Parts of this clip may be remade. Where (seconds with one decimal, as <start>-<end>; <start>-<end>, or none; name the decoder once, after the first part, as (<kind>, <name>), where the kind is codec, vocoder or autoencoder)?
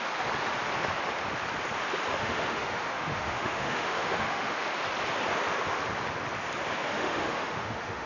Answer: 2.1-4.7 (autoencoder, DAC-VAE); 6.9-8.1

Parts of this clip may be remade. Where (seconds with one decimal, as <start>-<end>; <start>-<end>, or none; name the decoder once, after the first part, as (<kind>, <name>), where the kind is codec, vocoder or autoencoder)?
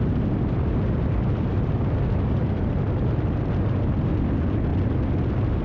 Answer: 0.0-4.7 (vocoder, BigVGAN v2)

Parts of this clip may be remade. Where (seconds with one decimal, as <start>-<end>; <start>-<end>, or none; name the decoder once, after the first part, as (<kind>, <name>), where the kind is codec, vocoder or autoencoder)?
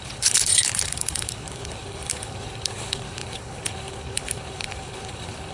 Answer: 0.0-5.5 (codec, HILCodec)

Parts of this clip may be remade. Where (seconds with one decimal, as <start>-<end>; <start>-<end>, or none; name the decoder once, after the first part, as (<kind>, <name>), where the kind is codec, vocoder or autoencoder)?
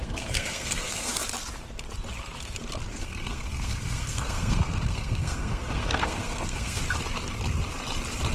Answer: 0.0-1.1 (codec, SNAC); 2.9-6.8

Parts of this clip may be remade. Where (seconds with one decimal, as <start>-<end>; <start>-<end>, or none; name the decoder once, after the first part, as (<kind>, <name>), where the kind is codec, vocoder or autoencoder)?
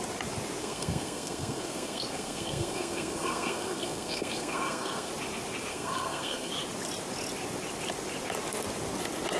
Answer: 0.6-5.1 (codec, SNAC); 5.7-6.5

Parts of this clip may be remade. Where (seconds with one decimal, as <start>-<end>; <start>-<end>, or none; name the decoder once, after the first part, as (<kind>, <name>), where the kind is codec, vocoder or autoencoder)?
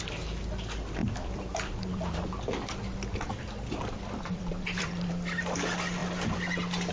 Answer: 1.0-5.1 (vocoder, BigVGAN v2)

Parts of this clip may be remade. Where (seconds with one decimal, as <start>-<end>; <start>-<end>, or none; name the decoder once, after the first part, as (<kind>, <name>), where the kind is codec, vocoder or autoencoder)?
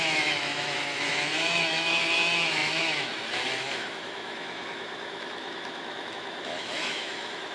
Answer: 0.0-7.5 (autoencoder, DAC-VAE)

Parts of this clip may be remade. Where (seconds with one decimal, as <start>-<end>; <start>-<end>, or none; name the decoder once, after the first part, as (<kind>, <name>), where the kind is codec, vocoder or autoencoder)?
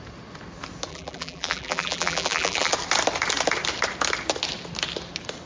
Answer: 0.9-2.7 (vocoder, BigVGAN v2)